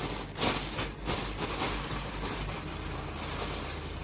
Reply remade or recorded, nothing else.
recorded